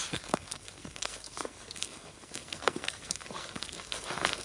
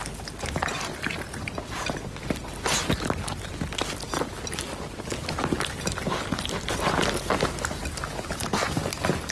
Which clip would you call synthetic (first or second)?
first